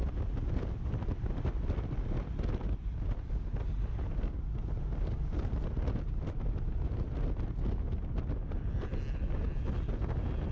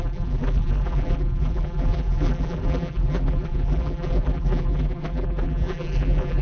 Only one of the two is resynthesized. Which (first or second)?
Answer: second